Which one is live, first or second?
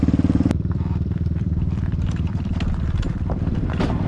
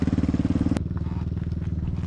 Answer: second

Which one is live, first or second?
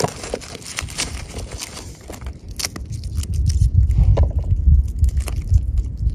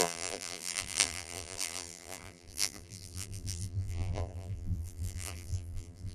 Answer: first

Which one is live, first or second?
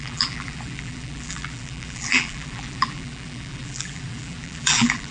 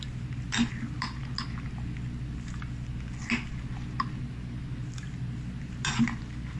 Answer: second